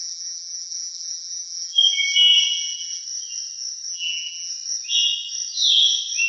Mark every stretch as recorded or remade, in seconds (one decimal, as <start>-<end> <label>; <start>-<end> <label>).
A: 0.0-3.0 remade; 3.0-3.9 recorded; 3.9-4.5 remade; 4.5-6.3 recorded